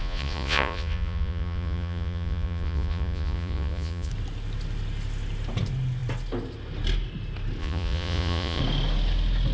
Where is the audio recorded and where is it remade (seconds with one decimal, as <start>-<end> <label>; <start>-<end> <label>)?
0.0-4.1 remade; 4.1-7.6 recorded; 7.6-8.6 remade; 8.6-9.5 recorded